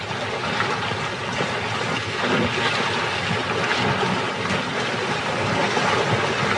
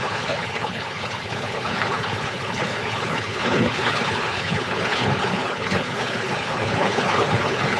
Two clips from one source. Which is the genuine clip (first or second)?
first